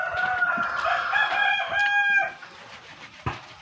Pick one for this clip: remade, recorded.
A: recorded